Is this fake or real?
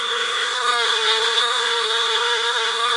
fake